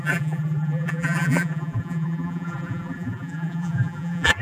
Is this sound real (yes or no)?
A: no